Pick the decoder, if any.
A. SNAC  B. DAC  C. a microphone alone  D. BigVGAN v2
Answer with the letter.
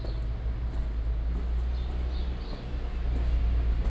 C